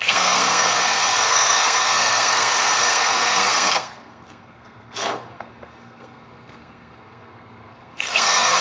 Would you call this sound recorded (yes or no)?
no